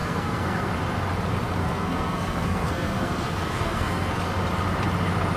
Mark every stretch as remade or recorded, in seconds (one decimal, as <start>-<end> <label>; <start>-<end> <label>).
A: 0.0-0.7 remade; 0.7-1.6 recorded; 1.6-4.2 remade; 4.2-5.4 recorded